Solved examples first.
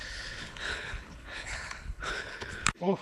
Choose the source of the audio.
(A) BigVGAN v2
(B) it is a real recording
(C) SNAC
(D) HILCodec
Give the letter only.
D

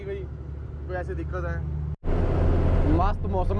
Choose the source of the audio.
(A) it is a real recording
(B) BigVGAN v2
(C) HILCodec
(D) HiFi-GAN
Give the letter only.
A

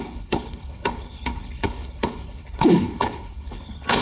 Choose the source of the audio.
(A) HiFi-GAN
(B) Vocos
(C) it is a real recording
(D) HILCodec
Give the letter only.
D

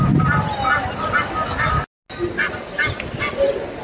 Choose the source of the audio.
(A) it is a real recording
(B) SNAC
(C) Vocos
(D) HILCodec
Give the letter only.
A